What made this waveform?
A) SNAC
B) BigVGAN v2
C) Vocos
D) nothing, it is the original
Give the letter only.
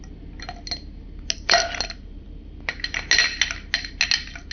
D